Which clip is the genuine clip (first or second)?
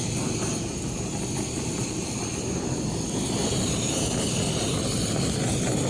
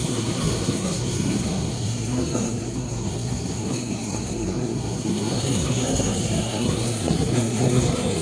first